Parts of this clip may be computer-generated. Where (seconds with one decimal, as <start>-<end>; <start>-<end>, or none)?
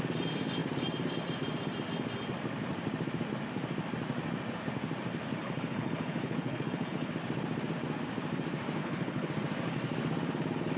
5.4-7.1; 8.8-9.3